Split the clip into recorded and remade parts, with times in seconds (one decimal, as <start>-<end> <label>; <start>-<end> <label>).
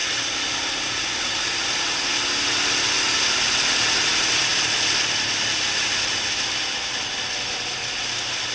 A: 0.0-8.5 recorded